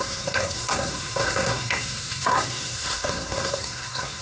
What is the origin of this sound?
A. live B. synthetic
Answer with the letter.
B